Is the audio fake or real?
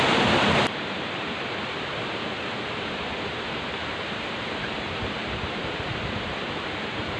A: fake